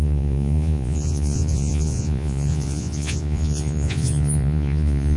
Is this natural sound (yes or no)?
no